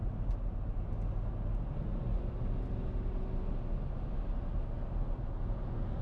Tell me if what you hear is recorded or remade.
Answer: recorded